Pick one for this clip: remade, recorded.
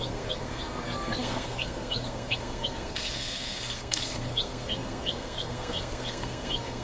remade